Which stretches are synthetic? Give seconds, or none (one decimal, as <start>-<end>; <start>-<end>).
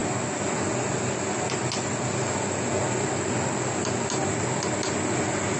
none